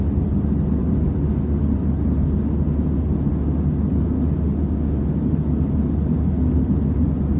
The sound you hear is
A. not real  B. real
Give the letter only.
B